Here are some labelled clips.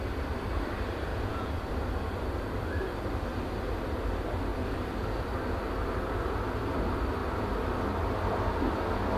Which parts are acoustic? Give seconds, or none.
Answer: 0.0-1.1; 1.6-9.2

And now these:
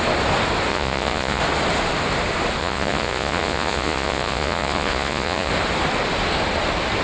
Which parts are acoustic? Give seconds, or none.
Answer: 0.0-0.7; 1.4-2.6; 5.5-7.0